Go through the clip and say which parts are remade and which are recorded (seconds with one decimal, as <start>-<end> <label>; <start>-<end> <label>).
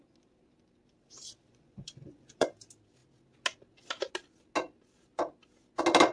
0.0-1.5 recorded; 1.5-2.5 remade; 2.5-6.1 recorded